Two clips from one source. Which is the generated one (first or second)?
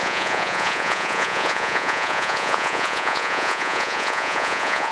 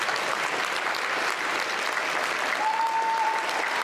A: first